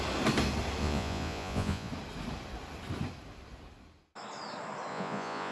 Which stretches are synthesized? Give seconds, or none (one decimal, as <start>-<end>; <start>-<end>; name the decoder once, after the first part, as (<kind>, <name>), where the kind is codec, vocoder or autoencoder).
0.8-1.9 (vocoder, Vocos); 4.9-5.5